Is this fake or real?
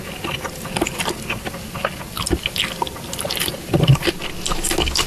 real